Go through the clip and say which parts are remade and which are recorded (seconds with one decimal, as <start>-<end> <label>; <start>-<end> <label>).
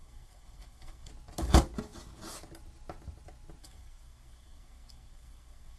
0.0-1.1 remade; 1.1-3.6 recorded; 3.6-5.8 remade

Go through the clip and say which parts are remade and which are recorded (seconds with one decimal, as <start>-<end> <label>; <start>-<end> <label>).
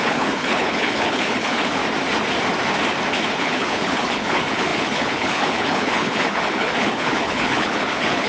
0.0-1.8 remade; 1.8-3.4 recorded; 3.4-8.3 remade